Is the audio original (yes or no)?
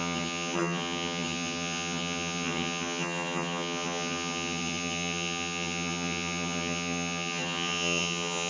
no